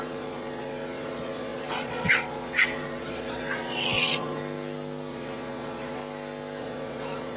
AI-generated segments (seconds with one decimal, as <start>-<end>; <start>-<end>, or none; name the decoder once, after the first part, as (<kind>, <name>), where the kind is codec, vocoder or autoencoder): 0.0-4.4 (vocoder, Vocos); 5.1-6.0; 6.6-7.4